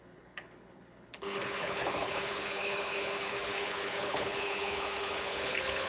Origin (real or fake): fake